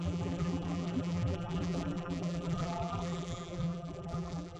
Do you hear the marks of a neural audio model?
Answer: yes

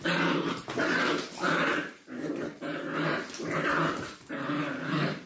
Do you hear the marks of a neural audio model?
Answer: yes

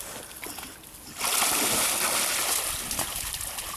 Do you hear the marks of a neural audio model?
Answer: no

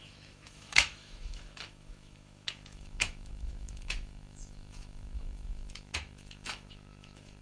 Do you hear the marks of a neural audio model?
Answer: yes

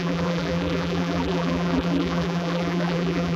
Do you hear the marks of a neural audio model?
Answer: yes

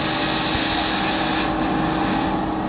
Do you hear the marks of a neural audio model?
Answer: no